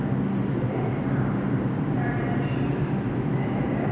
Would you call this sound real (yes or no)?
yes